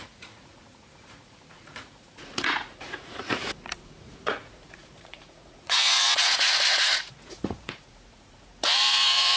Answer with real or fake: fake